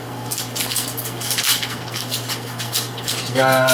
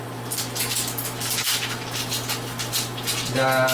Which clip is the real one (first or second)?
second